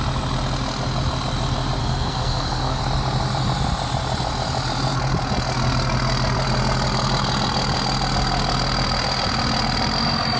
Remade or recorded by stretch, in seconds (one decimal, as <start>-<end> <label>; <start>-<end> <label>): 0.0-1.8 recorded; 1.8-2.8 remade; 2.8-10.4 recorded